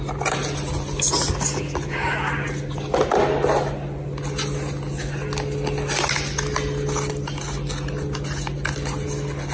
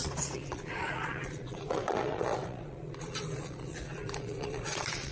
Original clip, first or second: first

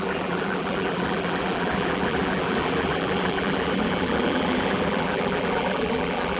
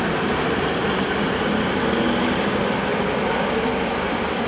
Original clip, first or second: second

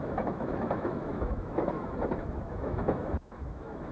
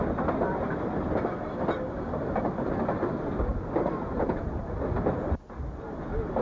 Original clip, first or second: second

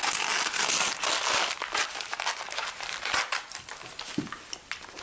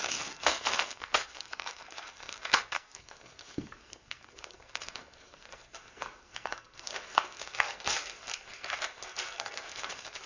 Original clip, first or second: first